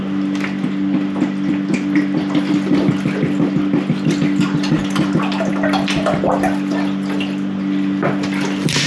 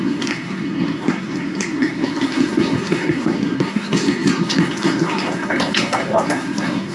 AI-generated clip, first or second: second